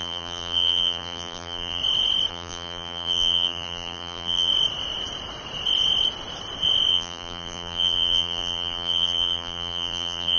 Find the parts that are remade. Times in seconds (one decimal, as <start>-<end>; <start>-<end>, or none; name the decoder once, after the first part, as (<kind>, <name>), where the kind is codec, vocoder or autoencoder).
0.0-1.8 (vocoder, BigVGAN v2); 2.3-4.5; 6.9-10.4